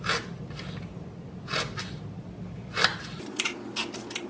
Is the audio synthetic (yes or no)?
no